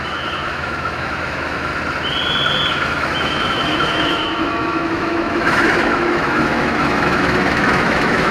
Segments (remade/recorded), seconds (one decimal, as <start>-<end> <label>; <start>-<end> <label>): 0.0-1.7 remade; 1.7-2.7 recorded; 2.7-8.3 remade